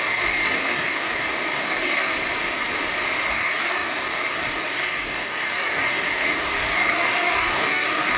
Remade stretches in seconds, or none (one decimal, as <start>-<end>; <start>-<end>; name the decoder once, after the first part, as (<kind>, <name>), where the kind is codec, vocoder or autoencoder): 0.0-2.1 (codec, DAC); 3.3-8.2